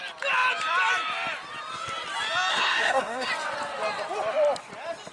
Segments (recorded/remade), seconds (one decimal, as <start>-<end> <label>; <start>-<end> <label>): 0.0-2.5 recorded; 2.5-3.3 remade; 3.3-5.1 recorded